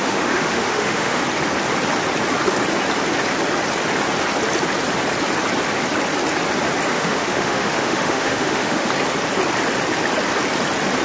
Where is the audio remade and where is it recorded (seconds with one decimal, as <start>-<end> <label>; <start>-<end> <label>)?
0.0-1.2 remade; 1.2-6.9 recorded; 6.9-8.9 remade; 8.9-11.0 recorded